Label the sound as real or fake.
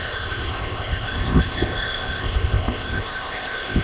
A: fake